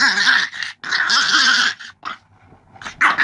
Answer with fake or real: real